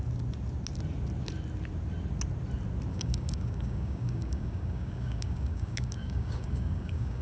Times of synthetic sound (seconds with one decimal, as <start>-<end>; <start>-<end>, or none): 2.9-7.2